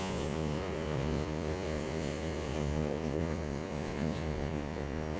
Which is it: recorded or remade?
remade